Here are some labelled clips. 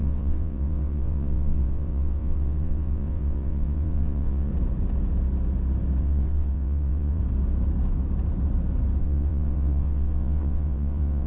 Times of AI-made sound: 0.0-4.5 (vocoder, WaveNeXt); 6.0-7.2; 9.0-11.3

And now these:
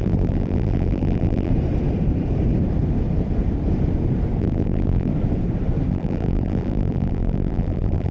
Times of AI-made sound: 0.0-1.5 (vocoder, BigVGAN v2); 4.4-5.1; 5.9-8.1

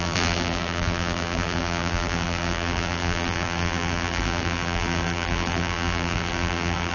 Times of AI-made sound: 0.0-6.9 (vocoder, BigVGAN v2)

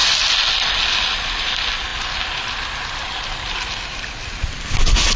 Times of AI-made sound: none

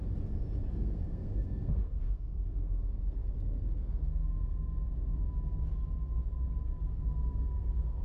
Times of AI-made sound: 0.7-4.5 (codec, SNAC); 6.9-8.0